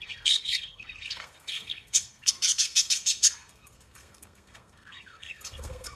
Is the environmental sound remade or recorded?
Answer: remade